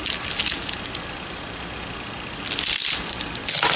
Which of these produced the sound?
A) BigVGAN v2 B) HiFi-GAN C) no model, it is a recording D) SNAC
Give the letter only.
C